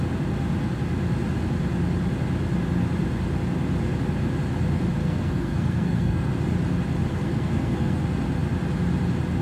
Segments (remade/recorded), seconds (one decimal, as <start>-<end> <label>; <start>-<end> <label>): 0.0-5.0 recorded; 5.0-6.3 remade; 6.3-7.1 recorded; 7.1-8.0 remade; 8.0-9.4 recorded